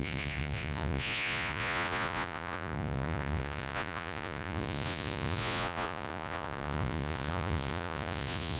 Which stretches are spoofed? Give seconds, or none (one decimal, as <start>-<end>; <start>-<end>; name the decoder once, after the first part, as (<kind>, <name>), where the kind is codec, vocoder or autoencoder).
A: 0.0-8.6 (vocoder, Vocos)